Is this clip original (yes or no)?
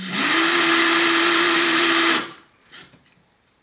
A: no